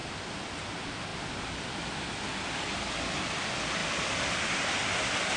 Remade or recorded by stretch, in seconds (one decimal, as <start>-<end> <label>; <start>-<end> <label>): 0.0-3.8 recorded; 3.8-4.6 remade; 4.6-5.4 recorded